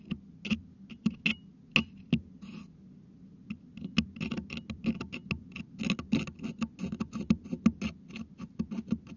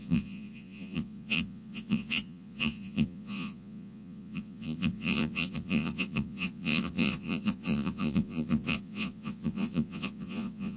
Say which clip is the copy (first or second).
second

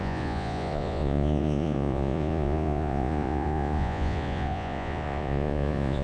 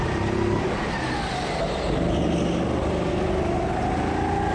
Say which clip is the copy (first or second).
first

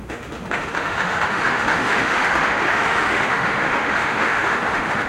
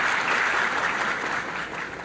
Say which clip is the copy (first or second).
first